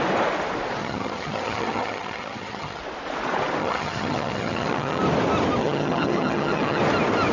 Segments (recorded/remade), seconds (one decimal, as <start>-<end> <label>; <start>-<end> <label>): 0.0-0.8 recorded; 0.8-2.8 remade; 2.8-3.6 recorded; 3.6-5.0 remade; 5.0-5.6 recorded; 5.6-6.8 remade; 6.8-7.3 recorded